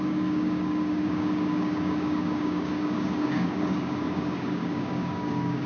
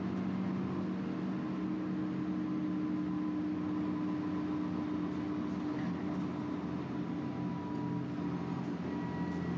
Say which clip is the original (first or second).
second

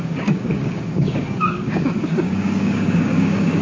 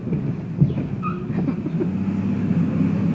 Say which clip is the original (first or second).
second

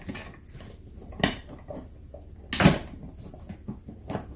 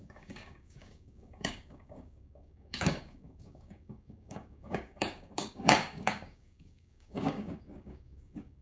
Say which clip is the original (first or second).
first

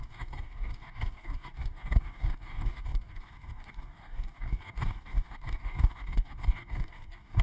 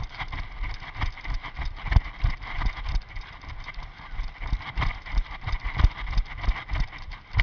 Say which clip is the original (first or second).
second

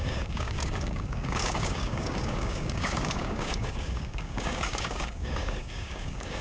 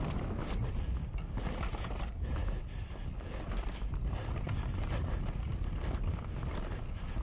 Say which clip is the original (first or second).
second